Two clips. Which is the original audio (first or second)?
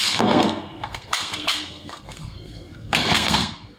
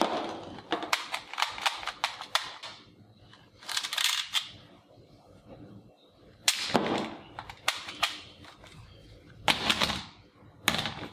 second